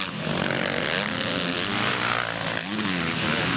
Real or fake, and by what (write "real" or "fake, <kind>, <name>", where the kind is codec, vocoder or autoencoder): real